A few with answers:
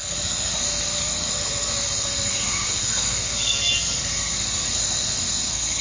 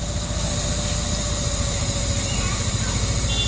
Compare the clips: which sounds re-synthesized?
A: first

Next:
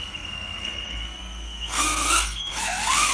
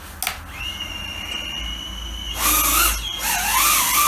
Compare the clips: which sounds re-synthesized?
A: first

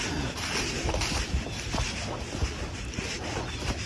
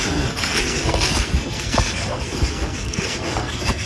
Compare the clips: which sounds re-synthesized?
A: second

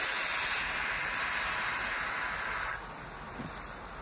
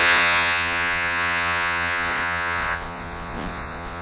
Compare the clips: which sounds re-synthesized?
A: second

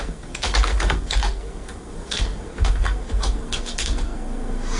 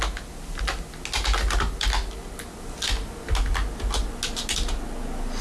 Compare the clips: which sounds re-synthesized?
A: first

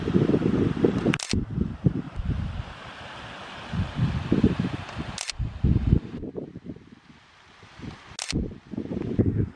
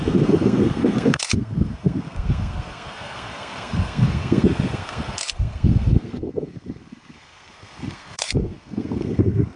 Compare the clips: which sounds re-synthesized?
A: second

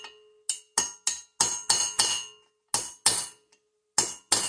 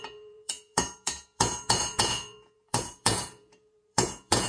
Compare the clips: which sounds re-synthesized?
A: second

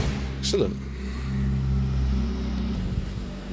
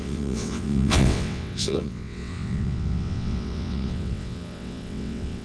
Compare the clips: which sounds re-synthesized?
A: second